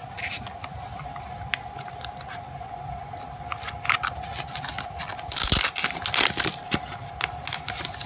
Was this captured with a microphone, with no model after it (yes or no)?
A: yes